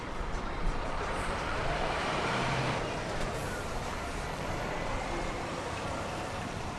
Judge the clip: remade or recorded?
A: remade